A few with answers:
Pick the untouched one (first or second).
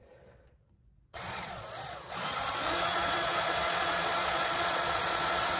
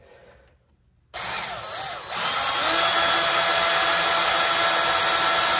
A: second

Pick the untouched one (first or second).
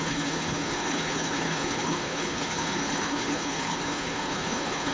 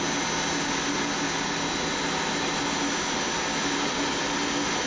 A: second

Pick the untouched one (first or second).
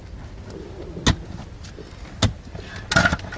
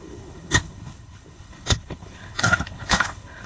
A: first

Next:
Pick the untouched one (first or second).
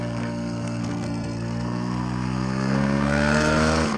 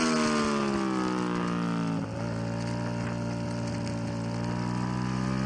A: second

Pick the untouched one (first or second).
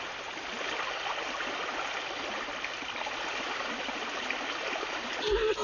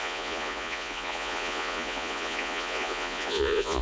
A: first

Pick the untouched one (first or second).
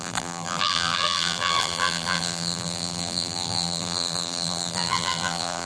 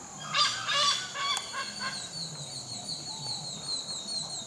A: second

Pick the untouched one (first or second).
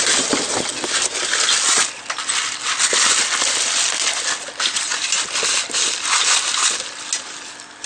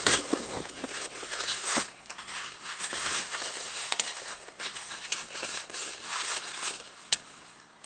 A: first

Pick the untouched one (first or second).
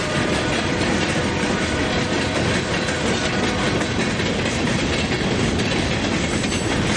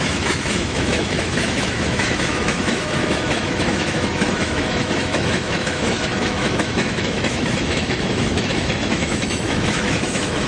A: first